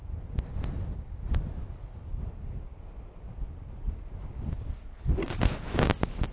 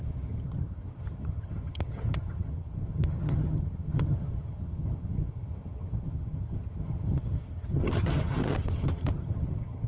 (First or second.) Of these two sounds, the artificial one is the second